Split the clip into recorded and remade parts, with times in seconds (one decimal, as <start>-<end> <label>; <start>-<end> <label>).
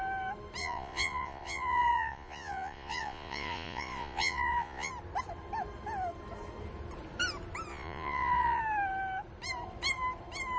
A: 0.0-0.6 recorded; 0.6-4.9 remade; 4.9-7.7 recorded; 7.7-8.6 remade; 8.6-10.6 recorded